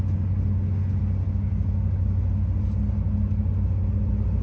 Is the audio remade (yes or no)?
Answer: no